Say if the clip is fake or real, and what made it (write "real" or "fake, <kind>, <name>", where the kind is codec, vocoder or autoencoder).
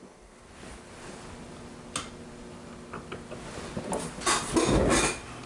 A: real